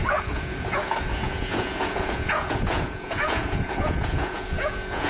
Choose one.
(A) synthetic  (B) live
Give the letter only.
A